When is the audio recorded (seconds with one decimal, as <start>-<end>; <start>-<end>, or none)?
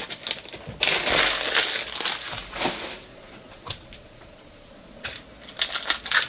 0.0-3.1; 5.1-6.3